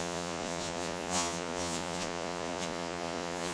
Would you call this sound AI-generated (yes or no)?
yes